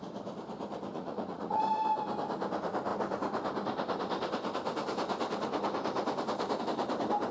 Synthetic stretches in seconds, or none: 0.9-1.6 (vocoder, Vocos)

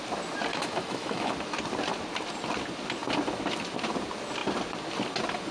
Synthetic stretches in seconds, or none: 0.5-1.3 (autoencoder, DAC-VAE)